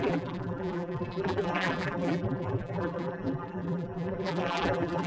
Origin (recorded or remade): remade